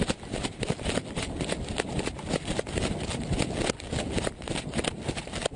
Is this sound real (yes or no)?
yes